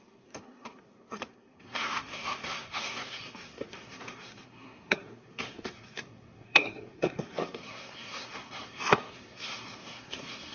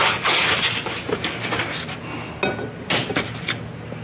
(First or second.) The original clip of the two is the second